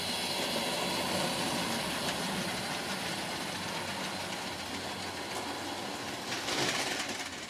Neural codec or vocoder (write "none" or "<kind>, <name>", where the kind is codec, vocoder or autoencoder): none